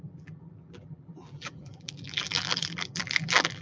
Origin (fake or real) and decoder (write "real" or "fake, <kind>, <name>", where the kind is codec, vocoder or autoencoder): fake, vocoder, BigVGAN v2